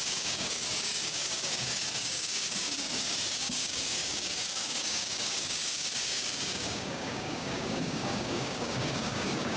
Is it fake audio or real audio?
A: fake